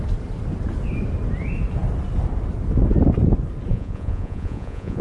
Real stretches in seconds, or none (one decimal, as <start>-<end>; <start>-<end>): 0.0-3.7